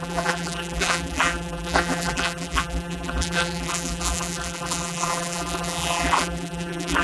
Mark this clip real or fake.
fake